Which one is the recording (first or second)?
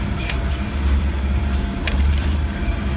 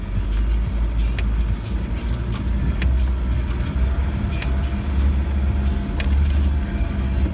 second